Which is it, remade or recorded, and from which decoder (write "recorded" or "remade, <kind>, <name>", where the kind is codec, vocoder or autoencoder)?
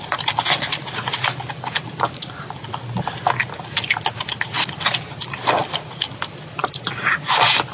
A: recorded